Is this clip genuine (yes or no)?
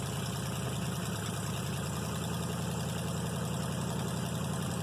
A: yes